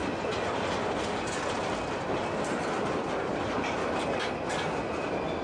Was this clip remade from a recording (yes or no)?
no